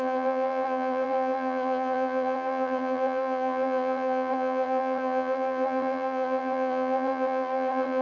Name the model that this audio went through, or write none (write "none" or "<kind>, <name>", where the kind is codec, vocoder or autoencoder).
vocoder, BigVGAN v2